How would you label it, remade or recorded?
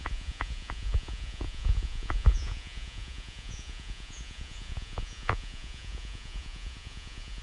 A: remade